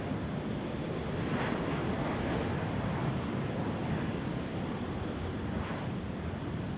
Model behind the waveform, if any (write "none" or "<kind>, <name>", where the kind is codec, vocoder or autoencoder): none